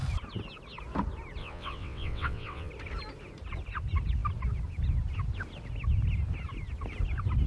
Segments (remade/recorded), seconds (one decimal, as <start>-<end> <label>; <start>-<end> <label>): 0.0-1.4 recorded; 1.4-2.7 remade; 2.7-7.5 recorded